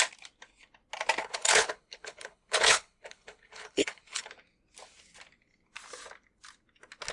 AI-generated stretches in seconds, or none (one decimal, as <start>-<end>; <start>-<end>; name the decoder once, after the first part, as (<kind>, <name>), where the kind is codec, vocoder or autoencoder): 1.2-4.3 (codec, HILCodec)

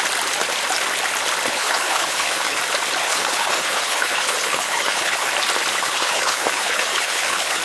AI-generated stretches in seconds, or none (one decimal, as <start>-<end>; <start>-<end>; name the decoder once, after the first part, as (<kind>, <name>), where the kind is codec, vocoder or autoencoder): 1.5-2.6 (codec, HILCodec); 3.0-5.3; 5.7-7.6

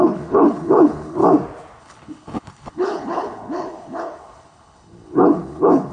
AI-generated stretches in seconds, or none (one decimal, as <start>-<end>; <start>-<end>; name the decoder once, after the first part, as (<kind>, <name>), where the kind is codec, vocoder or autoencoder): 0.0-1.2 (codec, HILCodec); 1.8-5.9

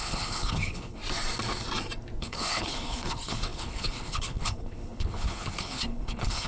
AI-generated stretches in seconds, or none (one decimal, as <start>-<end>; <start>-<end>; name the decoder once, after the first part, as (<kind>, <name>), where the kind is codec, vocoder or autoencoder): 0.0-1.0 (codec, HILCodec); 2.2-6.5